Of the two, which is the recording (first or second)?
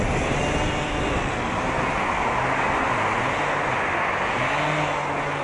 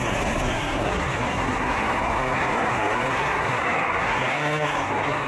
first